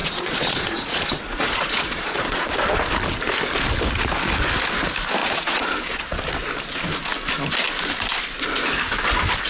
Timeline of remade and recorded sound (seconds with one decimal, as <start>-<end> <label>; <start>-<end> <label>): 0.0-2.5 remade; 2.5-5.2 recorded; 5.2-6.2 remade; 6.2-9.5 recorded